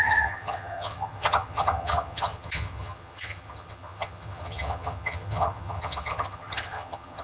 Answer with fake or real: fake